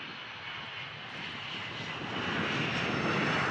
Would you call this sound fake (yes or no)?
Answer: no